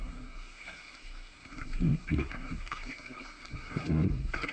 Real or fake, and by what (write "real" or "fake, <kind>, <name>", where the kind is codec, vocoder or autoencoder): fake, codec, SNAC